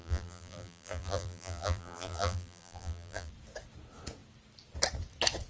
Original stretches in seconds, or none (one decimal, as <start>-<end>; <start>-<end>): 3.3-5.5